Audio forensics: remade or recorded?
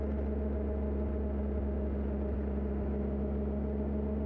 recorded